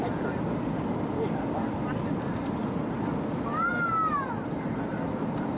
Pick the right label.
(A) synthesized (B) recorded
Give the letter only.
B